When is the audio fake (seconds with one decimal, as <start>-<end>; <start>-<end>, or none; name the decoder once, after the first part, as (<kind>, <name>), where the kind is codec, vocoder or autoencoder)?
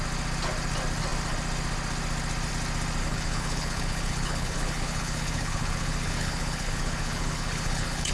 3.0-8.1 (codec, HILCodec)